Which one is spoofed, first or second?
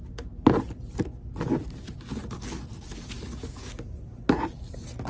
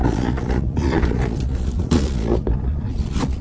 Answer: second